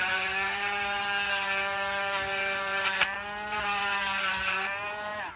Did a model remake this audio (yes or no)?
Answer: yes